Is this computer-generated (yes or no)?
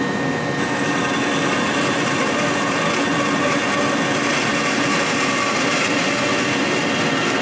no